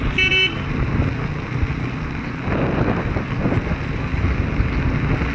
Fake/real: real